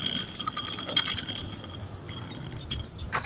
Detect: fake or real real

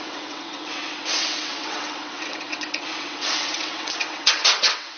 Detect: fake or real fake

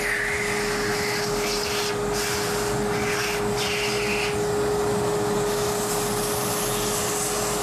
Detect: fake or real real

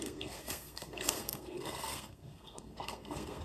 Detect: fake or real fake